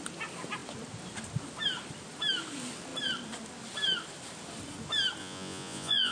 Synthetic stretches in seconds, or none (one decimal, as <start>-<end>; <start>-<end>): 5.2-6.1